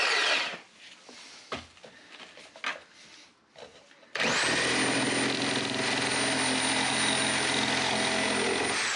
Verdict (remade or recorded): recorded